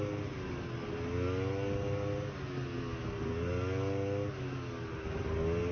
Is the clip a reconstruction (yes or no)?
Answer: no